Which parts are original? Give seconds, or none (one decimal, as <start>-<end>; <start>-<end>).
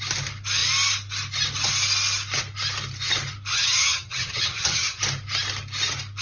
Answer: 0.0-3.5; 5.0-6.2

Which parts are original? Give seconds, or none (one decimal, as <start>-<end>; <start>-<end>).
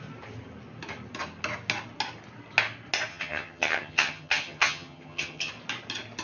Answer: 0.0-3.1; 5.5-6.2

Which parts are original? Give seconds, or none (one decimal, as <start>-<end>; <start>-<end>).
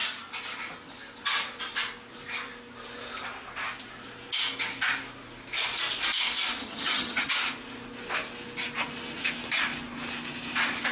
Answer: 0.0-6.6; 7.3-10.9